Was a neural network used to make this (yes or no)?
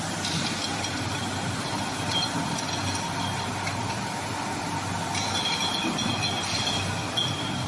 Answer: no